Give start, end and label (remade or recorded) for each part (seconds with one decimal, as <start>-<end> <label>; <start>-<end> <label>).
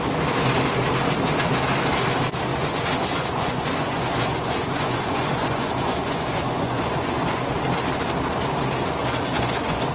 0.0-2.5 recorded; 2.5-7.5 remade; 7.5-9.0 recorded; 9.0-9.9 remade